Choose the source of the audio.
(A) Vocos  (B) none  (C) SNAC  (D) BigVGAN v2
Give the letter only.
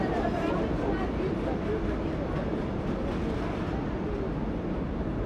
B